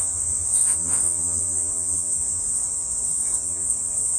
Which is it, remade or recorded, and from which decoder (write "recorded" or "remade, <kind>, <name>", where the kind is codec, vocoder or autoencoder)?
remade, vocoder, Vocos